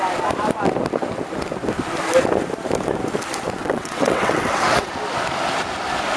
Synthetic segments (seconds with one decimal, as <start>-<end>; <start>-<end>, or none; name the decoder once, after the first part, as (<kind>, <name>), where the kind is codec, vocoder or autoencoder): 3.6-4.9 (vocoder, WaveNeXt)